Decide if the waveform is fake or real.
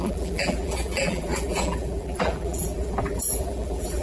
fake